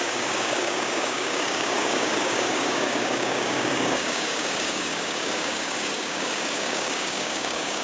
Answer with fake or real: fake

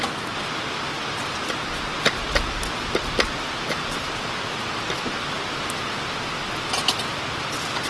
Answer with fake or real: real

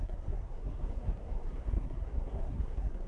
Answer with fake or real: fake